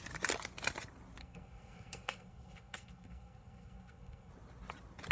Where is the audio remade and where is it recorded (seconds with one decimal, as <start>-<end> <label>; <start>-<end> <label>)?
0.0-1.2 recorded; 1.2-4.3 remade; 4.3-5.1 recorded